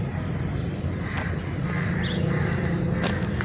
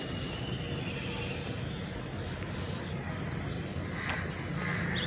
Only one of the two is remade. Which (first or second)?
first